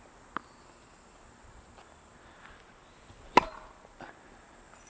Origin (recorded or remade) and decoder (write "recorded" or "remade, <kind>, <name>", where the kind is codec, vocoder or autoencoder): recorded